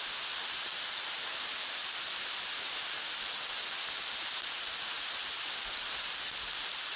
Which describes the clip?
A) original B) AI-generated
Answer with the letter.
A